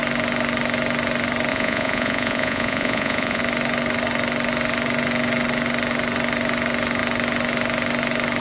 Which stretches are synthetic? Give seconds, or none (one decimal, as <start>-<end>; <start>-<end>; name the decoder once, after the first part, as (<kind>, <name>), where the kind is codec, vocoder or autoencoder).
1.5-3.4 (vocoder, Vocos)